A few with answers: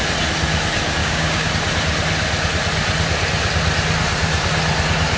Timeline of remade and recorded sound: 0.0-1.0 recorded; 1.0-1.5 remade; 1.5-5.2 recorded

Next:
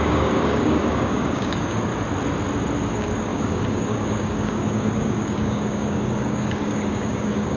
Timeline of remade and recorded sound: 0.0-1.9 remade; 1.9-2.9 recorded; 2.9-7.6 remade

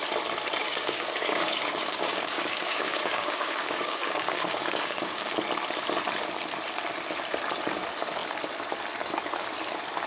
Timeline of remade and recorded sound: 0.0-0.6 recorded; 0.6-5.3 remade; 5.3-10.1 recorded